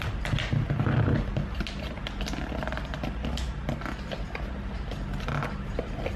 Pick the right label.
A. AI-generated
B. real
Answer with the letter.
B